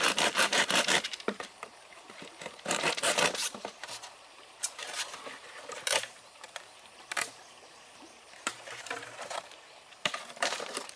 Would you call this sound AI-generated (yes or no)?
yes